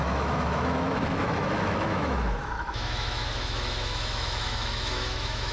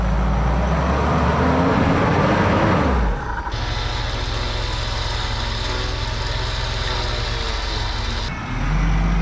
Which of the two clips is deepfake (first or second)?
first